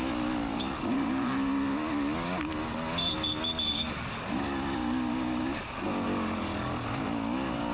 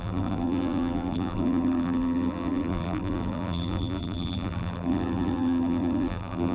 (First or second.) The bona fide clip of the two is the first